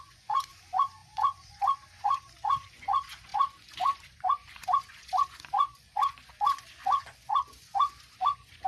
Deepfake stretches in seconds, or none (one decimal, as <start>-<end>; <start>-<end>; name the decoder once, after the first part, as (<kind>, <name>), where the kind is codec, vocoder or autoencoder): 0.0-8.7 (vocoder, Vocos)